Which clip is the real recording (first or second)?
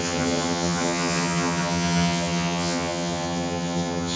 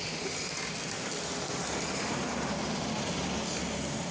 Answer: second